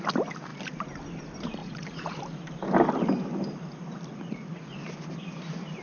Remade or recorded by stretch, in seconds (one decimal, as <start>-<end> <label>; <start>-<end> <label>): 0.0-1.6 recorded; 1.6-2.2 remade; 2.2-4.1 recorded; 4.1-4.7 remade; 4.7-5.8 recorded